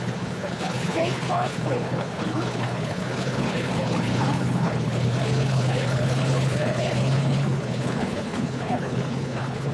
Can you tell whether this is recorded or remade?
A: remade